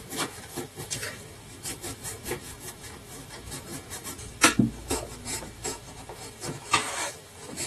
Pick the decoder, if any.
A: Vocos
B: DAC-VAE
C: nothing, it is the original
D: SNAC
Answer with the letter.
B